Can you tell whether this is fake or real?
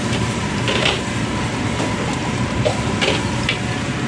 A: fake